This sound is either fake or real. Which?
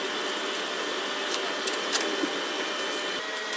real